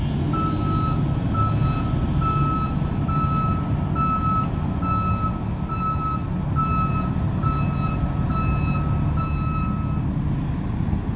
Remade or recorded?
recorded